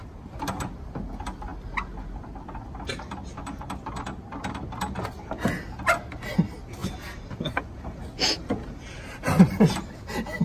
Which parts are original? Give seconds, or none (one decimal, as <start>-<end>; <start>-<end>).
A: 0.0-10.4